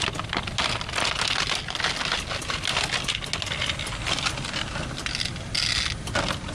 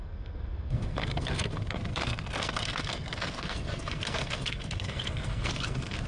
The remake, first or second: second